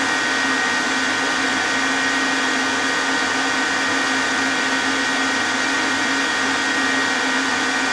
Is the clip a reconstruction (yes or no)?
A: no